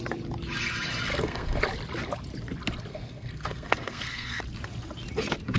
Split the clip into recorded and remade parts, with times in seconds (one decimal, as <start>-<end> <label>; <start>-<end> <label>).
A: 0.0-1.1 recorded; 1.1-1.6 remade; 1.6-2.9 recorded; 2.9-4.4 remade; 4.4-5.6 recorded